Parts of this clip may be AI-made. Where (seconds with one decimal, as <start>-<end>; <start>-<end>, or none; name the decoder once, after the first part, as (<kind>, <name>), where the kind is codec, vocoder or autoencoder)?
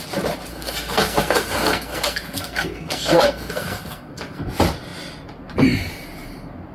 0.5-4.5 (codec, SNAC)